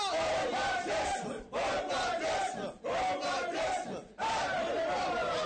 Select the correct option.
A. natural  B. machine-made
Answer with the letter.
A